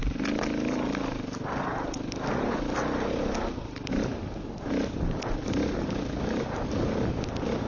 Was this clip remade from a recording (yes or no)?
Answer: no